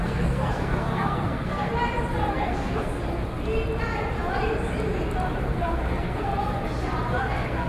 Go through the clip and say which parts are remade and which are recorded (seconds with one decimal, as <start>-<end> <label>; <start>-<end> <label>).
0.0-1.7 remade; 1.7-2.3 recorded; 2.3-2.9 remade; 2.9-5.4 recorded; 5.4-6.3 remade; 6.3-7.2 recorded; 7.2-7.7 remade